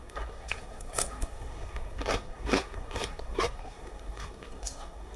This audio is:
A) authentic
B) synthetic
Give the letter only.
B